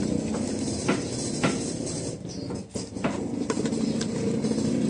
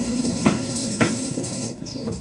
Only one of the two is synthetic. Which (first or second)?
second